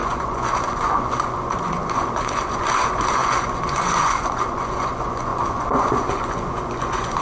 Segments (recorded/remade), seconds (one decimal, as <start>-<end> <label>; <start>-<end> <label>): 0.0-7.2 remade